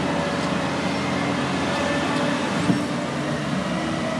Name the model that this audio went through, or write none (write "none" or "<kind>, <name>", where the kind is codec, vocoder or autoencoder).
none